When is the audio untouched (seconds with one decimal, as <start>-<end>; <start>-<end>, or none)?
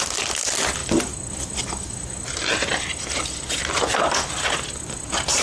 0.0-5.4